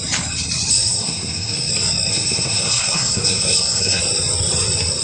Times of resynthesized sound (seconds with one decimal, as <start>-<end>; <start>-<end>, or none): 0.7-1.7; 2.1-4.0